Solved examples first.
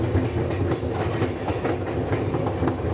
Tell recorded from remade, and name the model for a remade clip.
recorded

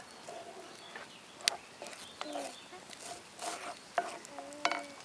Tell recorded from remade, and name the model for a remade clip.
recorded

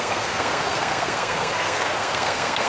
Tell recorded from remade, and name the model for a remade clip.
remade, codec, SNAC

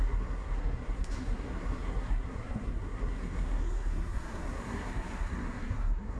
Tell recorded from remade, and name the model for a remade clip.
remade, codec, SNAC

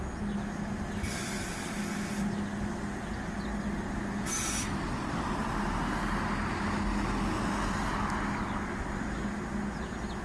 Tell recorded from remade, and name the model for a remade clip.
recorded